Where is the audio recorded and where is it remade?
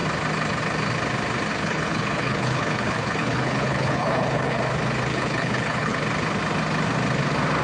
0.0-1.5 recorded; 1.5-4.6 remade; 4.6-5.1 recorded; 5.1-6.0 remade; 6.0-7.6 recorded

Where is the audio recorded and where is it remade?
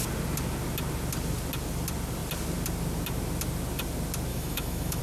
0.0-4.3 recorded; 4.3-5.0 remade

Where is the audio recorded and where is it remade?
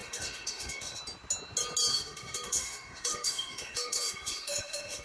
0.0-1.0 remade; 1.0-1.9 recorded; 1.9-5.0 remade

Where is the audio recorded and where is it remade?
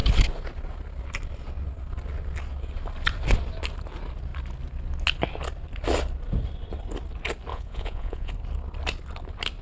0.0-7.5 recorded; 7.5-8.3 remade; 8.3-9.6 recorded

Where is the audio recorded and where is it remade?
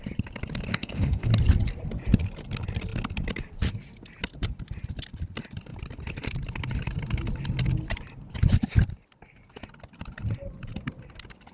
0.0-0.7 recorded; 0.7-1.3 remade; 1.3-11.5 recorded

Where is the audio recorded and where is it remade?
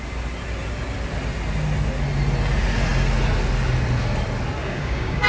0.0-4.6 recorded; 4.6-5.3 remade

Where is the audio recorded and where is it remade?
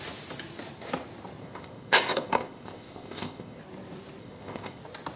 0.0-1.4 recorded; 1.4-3.6 remade; 3.6-4.2 recorded; 4.2-4.8 remade; 4.8-5.2 recorded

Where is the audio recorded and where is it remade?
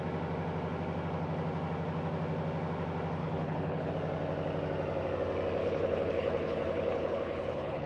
0.0-3.2 recorded; 3.2-3.9 remade; 3.9-5.6 recorded; 5.6-7.9 remade